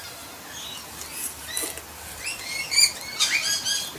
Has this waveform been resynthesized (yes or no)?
no